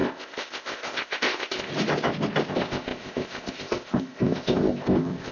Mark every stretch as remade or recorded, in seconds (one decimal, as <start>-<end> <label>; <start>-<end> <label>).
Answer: 0.0-1.7 remade; 1.7-2.5 recorded; 2.5-5.3 remade